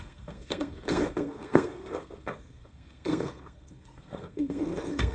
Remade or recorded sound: remade